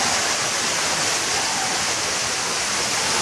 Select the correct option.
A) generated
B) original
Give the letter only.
B